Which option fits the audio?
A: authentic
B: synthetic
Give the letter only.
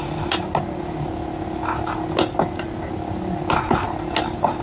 A